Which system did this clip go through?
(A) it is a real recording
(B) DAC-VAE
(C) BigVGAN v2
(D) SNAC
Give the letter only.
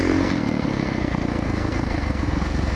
D